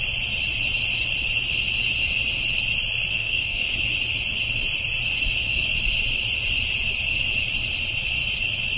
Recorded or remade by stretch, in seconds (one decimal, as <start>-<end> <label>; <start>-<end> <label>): 0.0-3.1 recorded; 3.1-3.7 remade; 3.7-8.8 recorded